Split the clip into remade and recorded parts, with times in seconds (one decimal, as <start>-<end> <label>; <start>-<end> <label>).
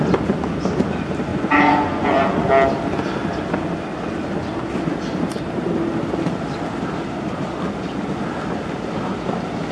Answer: 0.0-1.3 recorded; 1.3-2.5 remade; 2.5-9.7 recorded